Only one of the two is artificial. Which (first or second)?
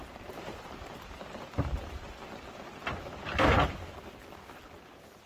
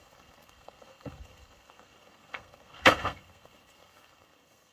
second